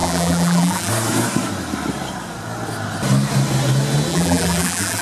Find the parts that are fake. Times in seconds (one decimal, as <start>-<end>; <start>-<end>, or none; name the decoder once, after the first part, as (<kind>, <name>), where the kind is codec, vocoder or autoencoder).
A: 0.0-0.9 (vocoder, BigVGAN v2); 4.1-5.0